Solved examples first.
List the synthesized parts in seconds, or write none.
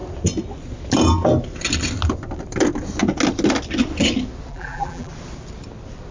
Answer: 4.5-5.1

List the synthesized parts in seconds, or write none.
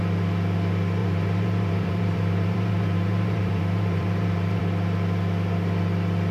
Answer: 1.0-4.6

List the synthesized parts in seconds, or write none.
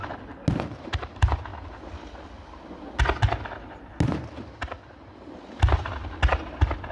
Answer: none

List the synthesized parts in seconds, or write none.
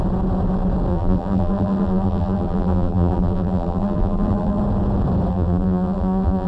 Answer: 0.9-4.6; 5.3-6.5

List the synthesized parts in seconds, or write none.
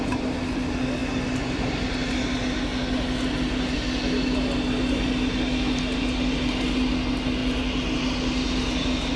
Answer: none